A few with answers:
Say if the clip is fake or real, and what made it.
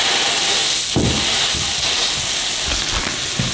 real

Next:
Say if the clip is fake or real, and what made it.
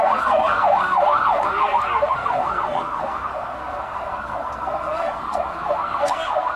fake, codec, SNAC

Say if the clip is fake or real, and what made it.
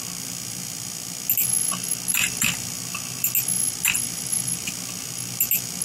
real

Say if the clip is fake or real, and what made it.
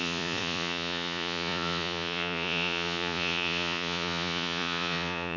fake, vocoder, Vocos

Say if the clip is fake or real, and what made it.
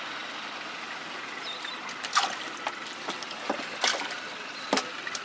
real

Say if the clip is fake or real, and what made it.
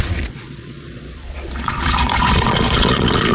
fake, vocoder, Vocos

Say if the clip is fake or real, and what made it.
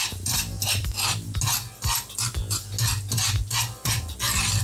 real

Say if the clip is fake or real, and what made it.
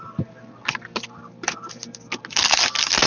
real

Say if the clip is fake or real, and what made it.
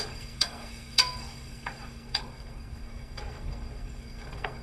fake, codec, SNAC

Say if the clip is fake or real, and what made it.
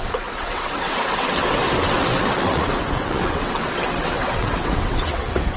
fake, vocoder, WaveNeXt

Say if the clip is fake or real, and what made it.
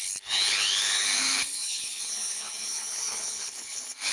fake, codec, HILCodec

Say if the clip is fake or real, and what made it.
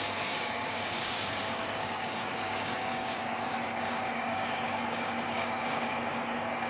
fake, codec, DAC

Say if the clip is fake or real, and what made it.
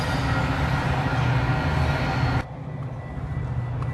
real